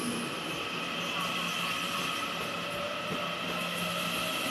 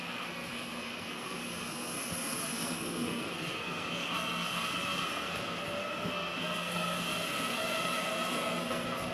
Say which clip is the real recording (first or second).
first